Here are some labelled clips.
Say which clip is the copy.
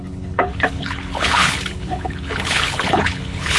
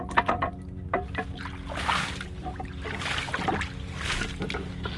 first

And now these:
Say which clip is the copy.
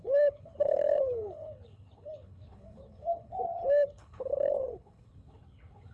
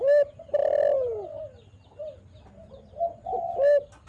first